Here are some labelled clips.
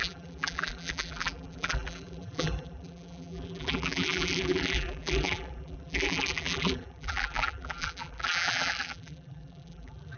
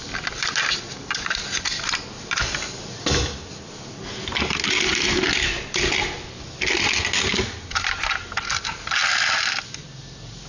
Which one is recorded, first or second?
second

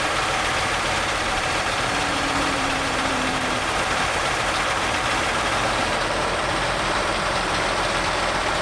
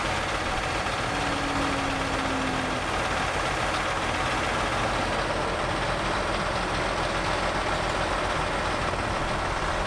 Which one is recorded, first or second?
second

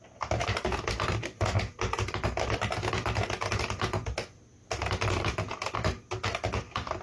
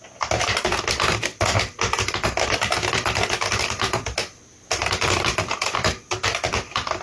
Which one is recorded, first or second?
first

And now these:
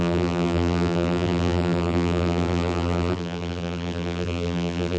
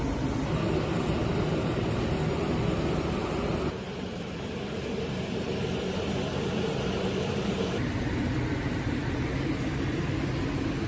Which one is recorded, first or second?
second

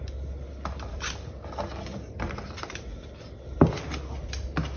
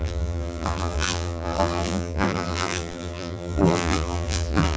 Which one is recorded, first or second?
first